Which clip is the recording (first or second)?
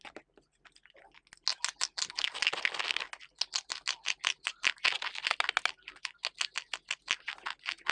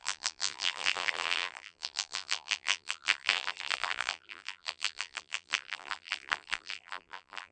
first